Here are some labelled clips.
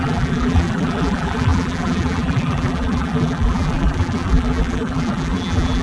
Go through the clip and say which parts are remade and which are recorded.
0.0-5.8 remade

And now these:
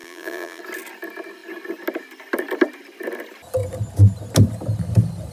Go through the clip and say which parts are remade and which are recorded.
0.0-0.6 remade; 0.6-5.3 recorded

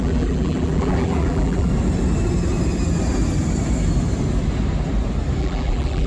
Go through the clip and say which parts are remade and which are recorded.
0.0-1.7 remade; 1.7-5.4 recorded; 5.4-6.1 remade

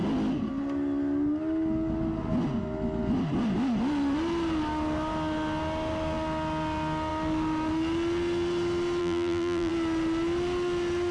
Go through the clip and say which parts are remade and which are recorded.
0.0-9.0 recorded; 9.0-9.7 remade; 9.7-11.1 recorded

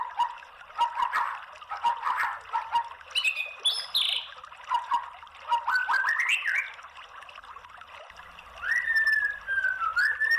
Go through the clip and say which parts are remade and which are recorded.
0.0-10.4 recorded

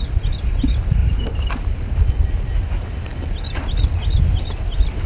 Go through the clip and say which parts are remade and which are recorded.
0.0-1.0 recorded; 1.0-1.5 remade; 1.5-5.1 recorded

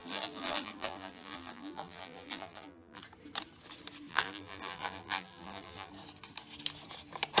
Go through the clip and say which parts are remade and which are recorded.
0.0-3.0 remade; 3.0-4.1 recorded; 4.1-5.9 remade; 5.9-7.4 recorded